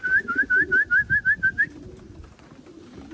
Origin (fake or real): real